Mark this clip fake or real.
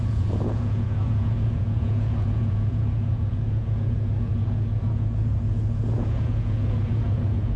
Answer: fake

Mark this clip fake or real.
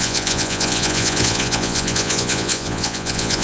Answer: fake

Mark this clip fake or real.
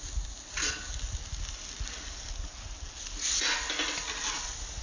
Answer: real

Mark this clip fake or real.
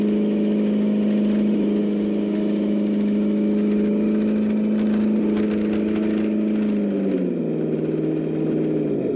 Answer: real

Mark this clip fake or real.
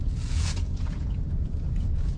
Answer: fake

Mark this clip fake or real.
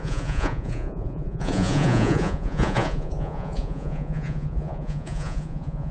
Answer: fake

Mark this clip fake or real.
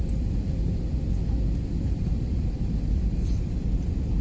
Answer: real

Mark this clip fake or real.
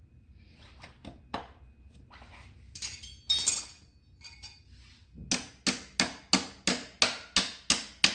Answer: real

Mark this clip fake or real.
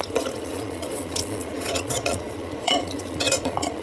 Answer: fake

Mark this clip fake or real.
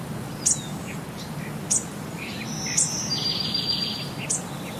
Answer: real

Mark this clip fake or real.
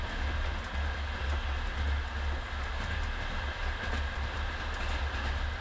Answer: real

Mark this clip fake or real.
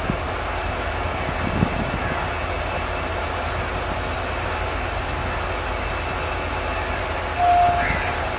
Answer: real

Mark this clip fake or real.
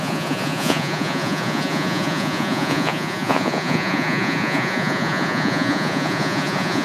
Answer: fake